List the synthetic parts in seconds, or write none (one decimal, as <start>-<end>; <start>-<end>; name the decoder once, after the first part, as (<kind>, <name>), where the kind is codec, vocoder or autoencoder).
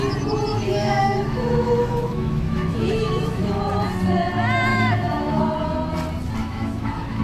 0.5-3.6 (autoencoder, DAC-VAE); 4.7-5.4; 6.4-7.2